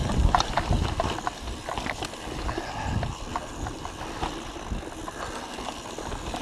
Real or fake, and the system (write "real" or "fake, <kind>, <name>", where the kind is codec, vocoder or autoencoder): real